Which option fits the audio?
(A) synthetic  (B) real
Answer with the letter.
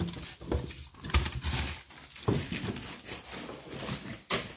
B